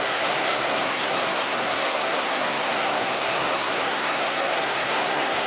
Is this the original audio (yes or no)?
no